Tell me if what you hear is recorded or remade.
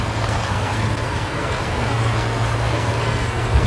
remade